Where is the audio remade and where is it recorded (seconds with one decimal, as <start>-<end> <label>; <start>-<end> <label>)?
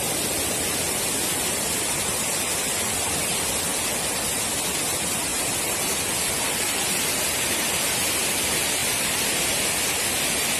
0.0-5.3 recorded; 5.3-6.0 remade; 6.0-10.6 recorded